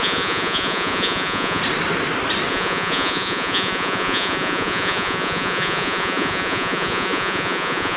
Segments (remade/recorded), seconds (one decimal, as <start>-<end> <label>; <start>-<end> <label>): 0.0-1.6 remade; 1.6-2.5 recorded; 2.5-8.0 remade